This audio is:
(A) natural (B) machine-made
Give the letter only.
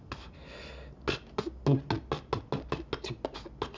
A